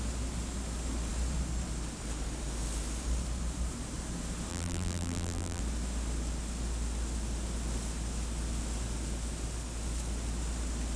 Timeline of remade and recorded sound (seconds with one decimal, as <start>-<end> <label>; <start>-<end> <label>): 0.0-4.5 recorded; 4.5-5.6 remade; 5.6-11.0 recorded